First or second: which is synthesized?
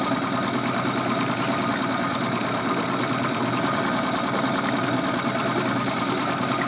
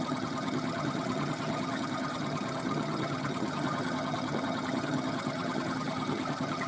second